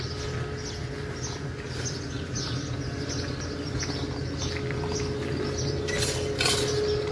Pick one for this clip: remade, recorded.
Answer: recorded